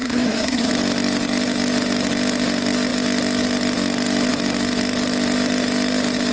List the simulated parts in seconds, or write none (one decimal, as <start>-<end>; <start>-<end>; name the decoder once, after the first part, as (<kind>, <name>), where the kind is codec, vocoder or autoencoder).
0.0-0.7 (codec, SNAC)